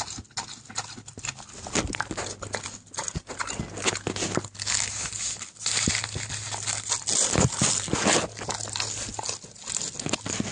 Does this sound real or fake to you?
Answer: real